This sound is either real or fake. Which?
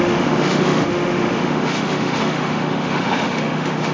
fake